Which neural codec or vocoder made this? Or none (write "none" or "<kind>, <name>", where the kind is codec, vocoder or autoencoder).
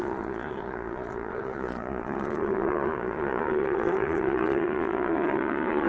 vocoder, Vocos